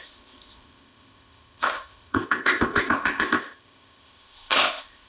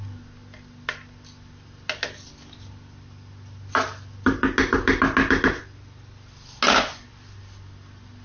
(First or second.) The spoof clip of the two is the first